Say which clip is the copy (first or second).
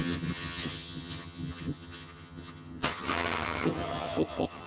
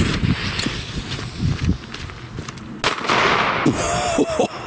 first